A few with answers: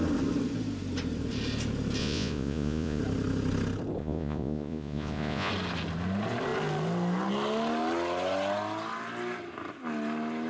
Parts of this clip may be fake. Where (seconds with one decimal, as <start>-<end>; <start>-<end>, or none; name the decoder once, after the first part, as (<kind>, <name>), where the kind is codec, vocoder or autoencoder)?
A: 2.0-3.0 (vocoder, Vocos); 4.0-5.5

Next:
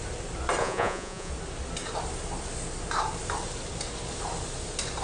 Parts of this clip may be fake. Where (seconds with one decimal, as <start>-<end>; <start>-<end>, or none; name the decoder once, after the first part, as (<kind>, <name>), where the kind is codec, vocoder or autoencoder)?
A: 0.6-1.3 (vocoder, Vocos)

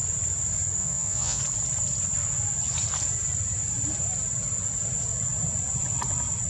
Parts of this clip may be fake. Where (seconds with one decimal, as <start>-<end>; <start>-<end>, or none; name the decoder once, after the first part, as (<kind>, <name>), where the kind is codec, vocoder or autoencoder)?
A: 0.8-1.4 (vocoder, Vocos)